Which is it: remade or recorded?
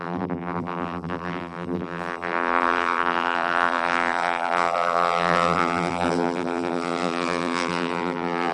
remade